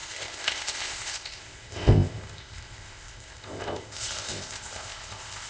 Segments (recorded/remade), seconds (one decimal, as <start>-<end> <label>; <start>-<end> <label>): 0.0-5.5 remade